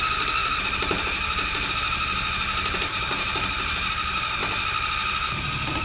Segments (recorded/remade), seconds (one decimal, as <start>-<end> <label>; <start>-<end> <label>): 0.0-0.4 recorded; 0.4-3.9 remade; 3.9-5.8 recorded